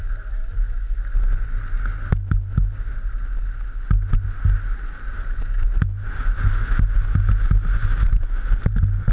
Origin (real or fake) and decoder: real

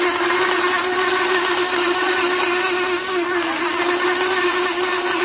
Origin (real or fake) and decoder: real